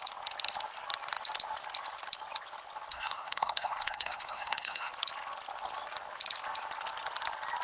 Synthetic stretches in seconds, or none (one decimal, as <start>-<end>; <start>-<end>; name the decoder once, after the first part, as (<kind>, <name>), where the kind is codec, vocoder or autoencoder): 2.9-4.9 (codec, SNAC)